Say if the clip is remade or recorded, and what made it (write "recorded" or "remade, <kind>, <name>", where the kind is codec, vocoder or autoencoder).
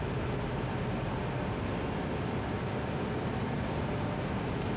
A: recorded